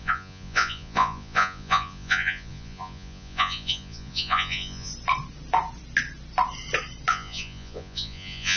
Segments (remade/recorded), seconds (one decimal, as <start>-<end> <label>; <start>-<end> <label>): 0.0-4.9 remade; 4.9-7.1 recorded; 7.1-8.6 remade